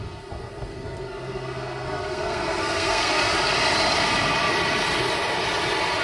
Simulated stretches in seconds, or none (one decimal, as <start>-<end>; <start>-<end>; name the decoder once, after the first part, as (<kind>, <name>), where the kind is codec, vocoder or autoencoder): 0.0-3.2 (codec, SNAC)